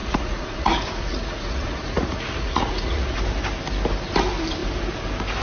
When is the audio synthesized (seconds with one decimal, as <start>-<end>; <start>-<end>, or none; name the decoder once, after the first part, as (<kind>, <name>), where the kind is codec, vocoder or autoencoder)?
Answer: 0.0-3.2 (vocoder, Vocos)